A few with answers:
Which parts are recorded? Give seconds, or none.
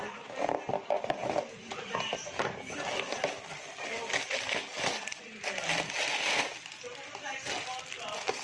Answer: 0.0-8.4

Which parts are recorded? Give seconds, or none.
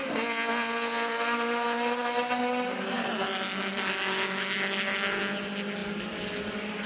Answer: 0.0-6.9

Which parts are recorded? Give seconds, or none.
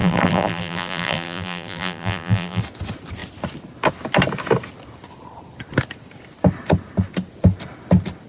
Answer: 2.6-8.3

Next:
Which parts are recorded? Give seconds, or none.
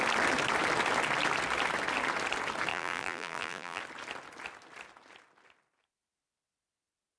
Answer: 0.0-2.7; 3.8-7.2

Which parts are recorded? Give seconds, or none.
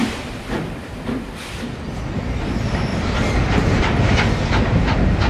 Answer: 1.5-5.3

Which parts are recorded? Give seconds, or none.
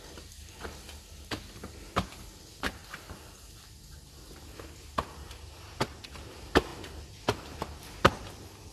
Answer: 0.0-8.7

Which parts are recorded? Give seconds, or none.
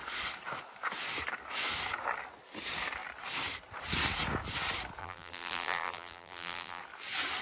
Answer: 0.0-5.0; 6.8-7.4